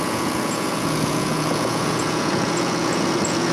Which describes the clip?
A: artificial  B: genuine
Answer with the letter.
A